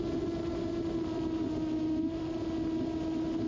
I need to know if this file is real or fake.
real